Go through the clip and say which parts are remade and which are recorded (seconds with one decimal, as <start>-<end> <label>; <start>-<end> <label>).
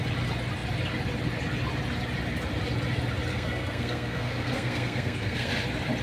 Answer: 0.0-3.3 recorded; 3.3-5.5 remade; 5.5-6.0 recorded